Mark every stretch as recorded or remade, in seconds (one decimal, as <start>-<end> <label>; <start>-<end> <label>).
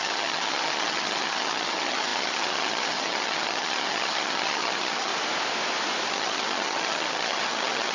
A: 0.0-5.1 remade; 5.1-6.1 recorded; 6.1-7.9 remade